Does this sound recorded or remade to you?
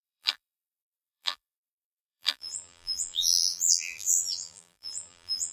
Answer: remade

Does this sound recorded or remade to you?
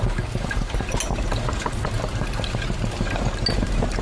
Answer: recorded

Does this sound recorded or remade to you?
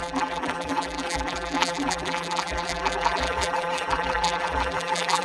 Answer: remade